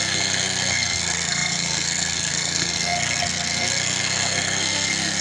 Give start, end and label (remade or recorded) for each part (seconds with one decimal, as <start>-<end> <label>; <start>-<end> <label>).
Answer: 0.0-5.2 remade